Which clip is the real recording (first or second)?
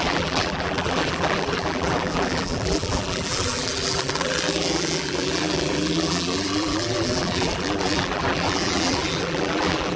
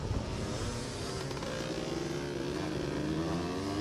second